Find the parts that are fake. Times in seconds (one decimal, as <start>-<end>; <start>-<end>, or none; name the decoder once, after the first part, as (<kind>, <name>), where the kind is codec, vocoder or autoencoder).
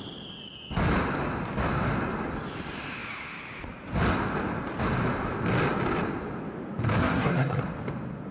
7.0-7.6 (codec, SNAC)